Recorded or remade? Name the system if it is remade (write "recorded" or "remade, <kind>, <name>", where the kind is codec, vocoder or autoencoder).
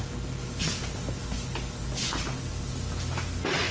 recorded